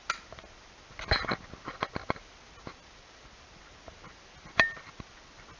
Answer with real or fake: real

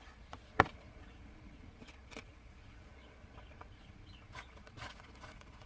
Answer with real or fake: fake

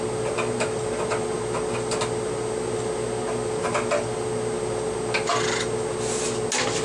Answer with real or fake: real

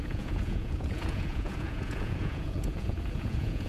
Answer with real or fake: fake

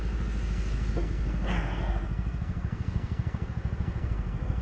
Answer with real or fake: fake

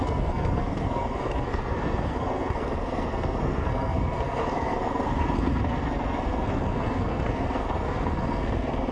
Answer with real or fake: fake